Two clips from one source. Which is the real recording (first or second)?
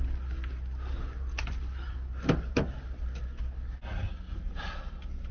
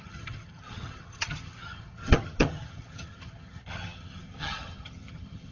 first